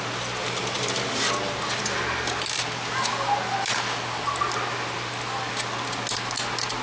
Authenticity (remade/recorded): recorded